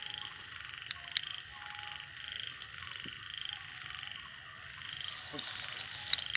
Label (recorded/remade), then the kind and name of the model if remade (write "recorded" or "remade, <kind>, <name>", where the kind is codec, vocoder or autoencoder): recorded